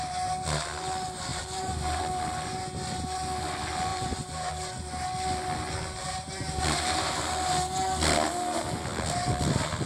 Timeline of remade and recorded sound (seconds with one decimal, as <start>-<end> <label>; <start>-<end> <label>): 0.0-1.3 recorded; 1.3-2.0 remade; 2.0-3.9 recorded; 3.9-4.5 remade; 4.5-6.0 recorded; 6.0-7.3 remade; 7.3-9.9 recorded